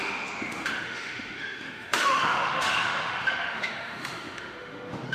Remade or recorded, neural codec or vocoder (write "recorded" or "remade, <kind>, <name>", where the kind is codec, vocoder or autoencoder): remade, autoencoder, DAC-VAE